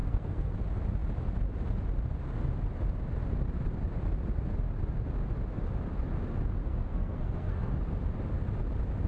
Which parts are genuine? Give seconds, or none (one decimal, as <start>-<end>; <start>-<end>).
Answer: 0.5-6.6; 7.7-9.1